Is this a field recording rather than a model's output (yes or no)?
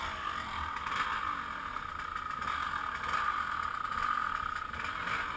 yes